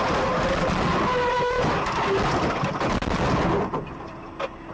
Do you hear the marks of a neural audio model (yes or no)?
no